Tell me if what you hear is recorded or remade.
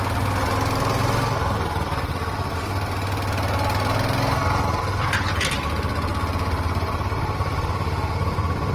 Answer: recorded